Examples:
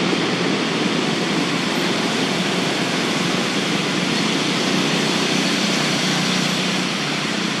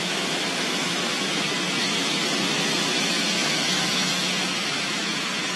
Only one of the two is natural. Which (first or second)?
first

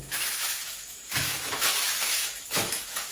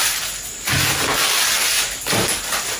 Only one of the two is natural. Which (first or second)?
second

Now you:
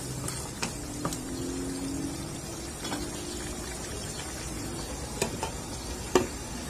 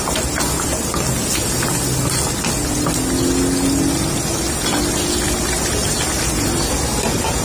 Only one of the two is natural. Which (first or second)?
second